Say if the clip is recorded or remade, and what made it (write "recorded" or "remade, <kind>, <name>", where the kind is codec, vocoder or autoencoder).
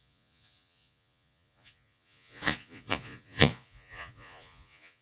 remade, vocoder, Vocos